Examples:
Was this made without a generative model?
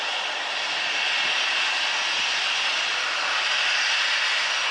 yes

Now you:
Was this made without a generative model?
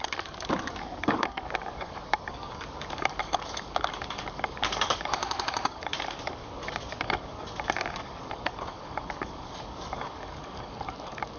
no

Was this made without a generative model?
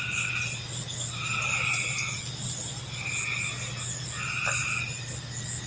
yes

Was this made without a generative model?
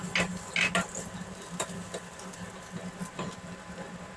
yes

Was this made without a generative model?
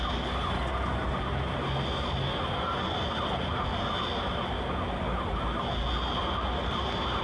yes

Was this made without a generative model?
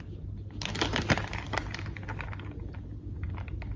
yes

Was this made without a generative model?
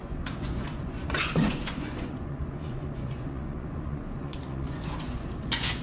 no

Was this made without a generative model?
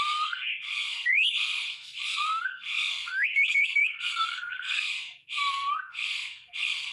no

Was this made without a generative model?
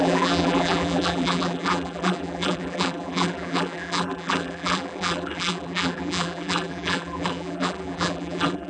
no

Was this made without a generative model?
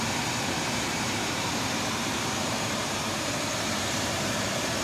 no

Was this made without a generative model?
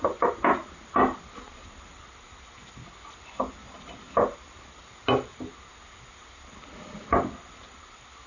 yes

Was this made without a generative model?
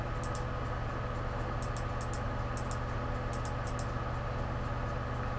yes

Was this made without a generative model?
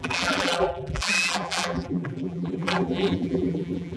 no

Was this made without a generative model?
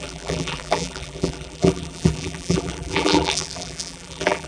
no